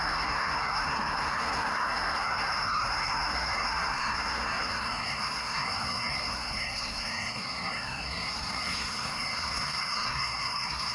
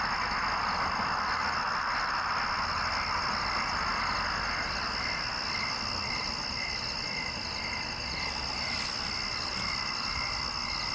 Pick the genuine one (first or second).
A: second